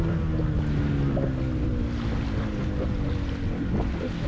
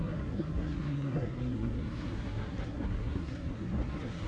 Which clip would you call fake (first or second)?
second